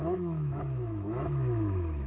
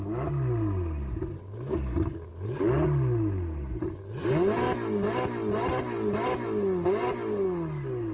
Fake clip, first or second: first